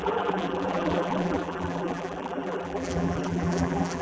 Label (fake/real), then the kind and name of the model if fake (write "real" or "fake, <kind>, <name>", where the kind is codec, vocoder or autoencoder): fake, vocoder, BigVGAN v2